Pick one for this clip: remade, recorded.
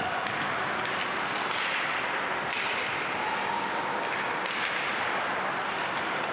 recorded